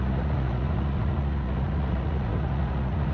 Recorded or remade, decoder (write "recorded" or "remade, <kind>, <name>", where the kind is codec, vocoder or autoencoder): remade, vocoder, Vocos